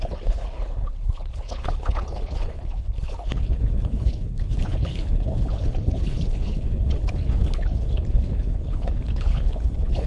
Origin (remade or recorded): remade